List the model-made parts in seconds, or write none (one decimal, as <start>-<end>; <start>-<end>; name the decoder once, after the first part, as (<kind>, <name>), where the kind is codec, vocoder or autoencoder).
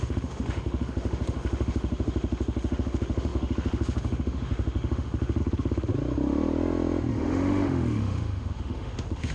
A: 0.0-5.9 (autoencoder, DAC-VAE); 7.1-9.3